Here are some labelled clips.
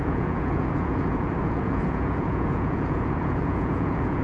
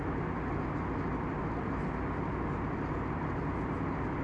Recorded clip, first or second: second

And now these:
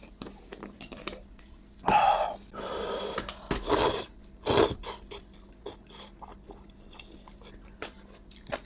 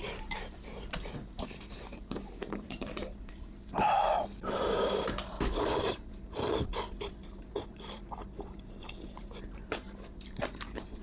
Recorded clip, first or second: first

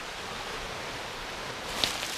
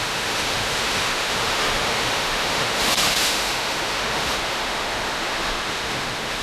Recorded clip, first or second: first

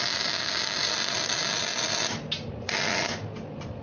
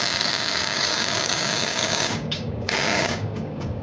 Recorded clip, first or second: first